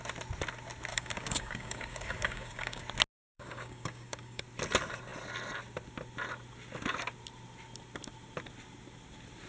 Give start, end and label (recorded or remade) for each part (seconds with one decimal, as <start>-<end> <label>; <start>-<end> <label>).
0.0-0.9 recorded; 0.9-2.8 remade; 2.8-3.3 recorded; 3.3-4.4 remade; 4.4-9.5 recorded